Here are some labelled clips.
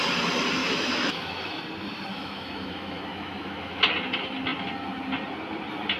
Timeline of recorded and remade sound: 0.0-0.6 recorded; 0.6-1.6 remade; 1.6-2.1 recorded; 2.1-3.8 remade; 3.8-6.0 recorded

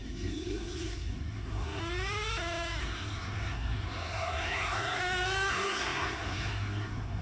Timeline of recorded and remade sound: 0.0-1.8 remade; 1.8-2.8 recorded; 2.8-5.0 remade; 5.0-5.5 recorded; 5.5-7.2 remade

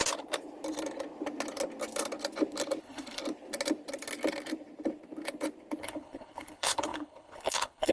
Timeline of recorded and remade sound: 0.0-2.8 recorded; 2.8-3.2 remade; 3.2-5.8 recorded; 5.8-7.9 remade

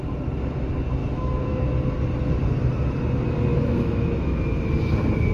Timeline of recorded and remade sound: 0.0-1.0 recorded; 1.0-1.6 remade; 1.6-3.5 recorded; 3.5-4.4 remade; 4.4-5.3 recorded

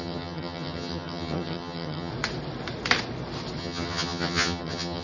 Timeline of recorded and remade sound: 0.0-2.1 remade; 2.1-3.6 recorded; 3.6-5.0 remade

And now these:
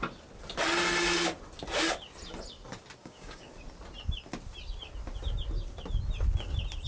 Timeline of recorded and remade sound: 0.0-3.0 recorded; 3.0-3.5 remade; 3.5-6.9 recorded

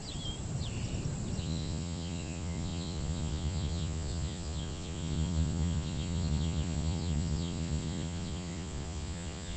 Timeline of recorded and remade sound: 0.0-1.4 recorded; 1.4-9.6 remade

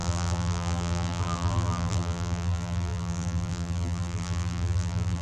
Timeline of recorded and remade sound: 0.0-5.2 remade